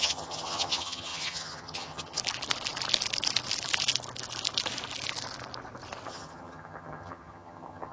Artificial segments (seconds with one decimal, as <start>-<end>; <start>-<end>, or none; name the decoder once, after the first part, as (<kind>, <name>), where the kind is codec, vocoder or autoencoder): 0.0-2.2 (vocoder, HiFi-GAN); 6.1-7.9